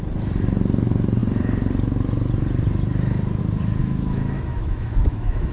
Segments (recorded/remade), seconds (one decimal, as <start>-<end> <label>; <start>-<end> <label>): 0.0-3.8 recorded; 3.8-5.5 remade

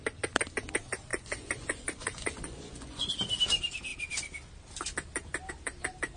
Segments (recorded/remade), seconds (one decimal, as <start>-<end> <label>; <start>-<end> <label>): 0.0-1.1 recorded; 1.1-3.1 remade; 3.1-6.2 recorded

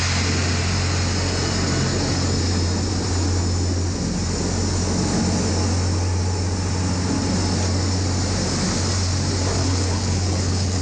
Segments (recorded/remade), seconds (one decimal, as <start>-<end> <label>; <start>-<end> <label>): 0.0-9.6 recorded; 9.6-10.8 remade

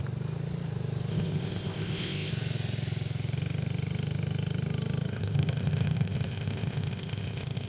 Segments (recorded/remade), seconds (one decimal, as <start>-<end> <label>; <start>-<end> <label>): 0.0-1.1 recorded; 1.1-2.3 remade; 2.3-5.1 recorded; 5.1-7.7 remade

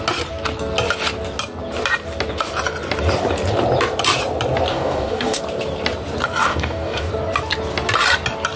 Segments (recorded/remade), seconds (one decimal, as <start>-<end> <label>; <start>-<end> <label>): 0.0-4.7 recorded; 4.7-5.4 remade; 5.4-6.4 recorded; 6.4-7.1 remade; 7.1-8.6 recorded

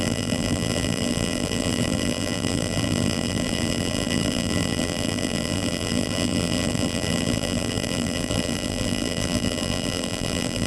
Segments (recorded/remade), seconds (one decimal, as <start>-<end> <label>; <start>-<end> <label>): 0.0-10.7 remade